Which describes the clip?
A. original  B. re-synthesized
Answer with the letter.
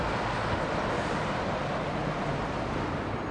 A